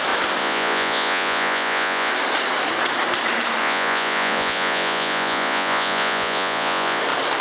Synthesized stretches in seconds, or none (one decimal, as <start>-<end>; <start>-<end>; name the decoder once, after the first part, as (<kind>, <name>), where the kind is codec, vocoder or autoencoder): 0.4-2.1 (vocoder, Vocos); 3.6-7.0